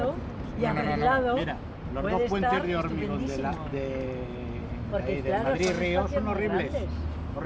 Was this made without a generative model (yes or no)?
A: yes